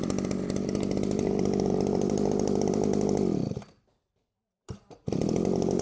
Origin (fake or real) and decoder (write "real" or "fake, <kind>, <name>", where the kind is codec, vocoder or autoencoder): fake, vocoder, BigVGAN v2